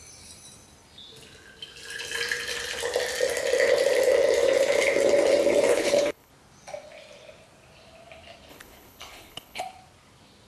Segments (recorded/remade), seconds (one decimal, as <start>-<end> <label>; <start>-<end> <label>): 0.0-5.7 recorded; 5.7-6.3 remade; 6.3-8.5 recorded; 8.5-9.6 remade; 9.6-10.5 recorded